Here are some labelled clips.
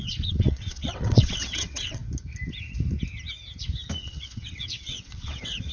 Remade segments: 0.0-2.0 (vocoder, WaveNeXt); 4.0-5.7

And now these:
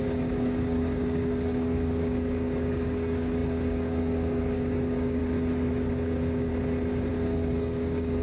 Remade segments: 0.0-5.2 (codec, DAC); 5.9-6.5; 7.1-8.2

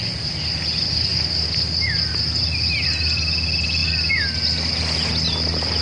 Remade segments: 3.8-5.8 (vocoder, BigVGAN v2)

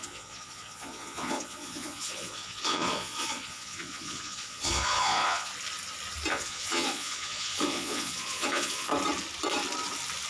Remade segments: 0.0-5.5 (vocoder, Vocos); 6.3-8.9

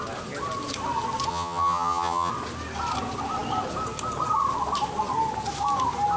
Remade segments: 1.3-2.3 (vocoder, HiFi-GAN)

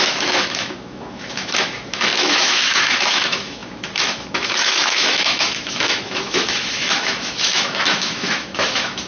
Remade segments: 0.0-9.1 (autoencoder, DAC-VAE)

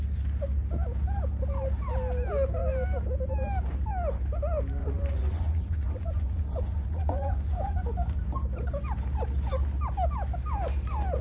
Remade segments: 4.8-8.2 (vocoder, Vocos)

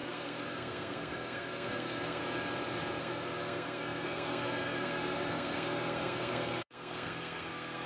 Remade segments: 0.0-2.2 (codec, SNAC); 3.0-7.9